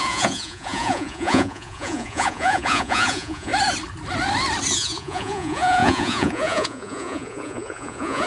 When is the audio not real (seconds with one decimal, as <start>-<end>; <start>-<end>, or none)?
0.0-3.5; 4.7-8.3